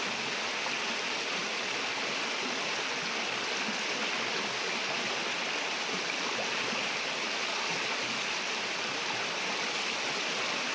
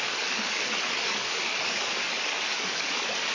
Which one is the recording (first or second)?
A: first